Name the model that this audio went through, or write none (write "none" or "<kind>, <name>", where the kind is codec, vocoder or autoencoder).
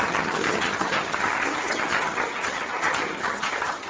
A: vocoder, HiFi-GAN